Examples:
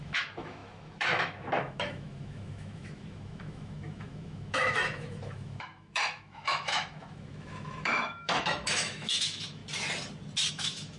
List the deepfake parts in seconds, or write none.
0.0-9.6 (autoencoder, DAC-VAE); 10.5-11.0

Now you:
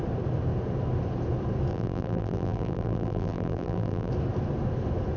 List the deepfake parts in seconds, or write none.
1.7-4.1 (vocoder, BigVGAN v2)

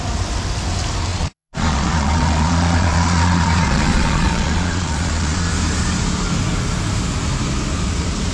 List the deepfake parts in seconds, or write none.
1.1-5.5 (vocoder, Vocos)

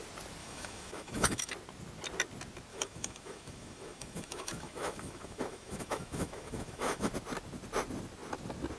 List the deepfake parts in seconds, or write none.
0.4-1.5 (autoencoder, DAC-VAE); 2.7-7.1

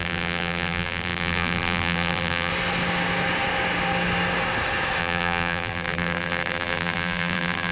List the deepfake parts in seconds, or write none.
0.0-2.5 (vocoder, BigVGAN v2); 5.0-7.7